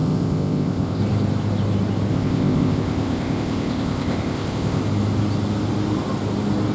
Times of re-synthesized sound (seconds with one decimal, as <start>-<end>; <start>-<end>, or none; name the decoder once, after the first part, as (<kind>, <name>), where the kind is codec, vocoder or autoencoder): 0.0-1.0 (codec, ZipCodec); 2.1-4.8